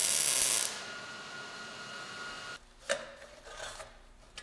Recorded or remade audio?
recorded